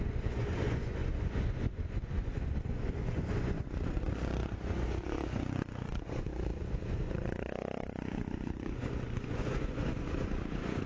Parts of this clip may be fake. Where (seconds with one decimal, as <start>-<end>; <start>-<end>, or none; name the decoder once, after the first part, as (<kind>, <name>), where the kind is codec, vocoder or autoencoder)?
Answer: 0.0-10.9 (vocoder, Vocos)